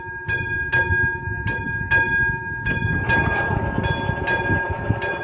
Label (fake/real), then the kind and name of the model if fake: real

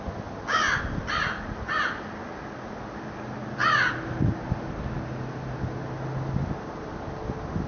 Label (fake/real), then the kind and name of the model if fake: real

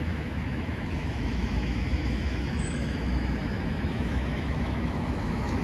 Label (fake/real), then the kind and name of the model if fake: fake, autoencoder, DAC-VAE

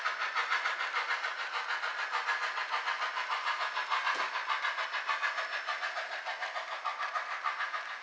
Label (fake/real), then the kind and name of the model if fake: real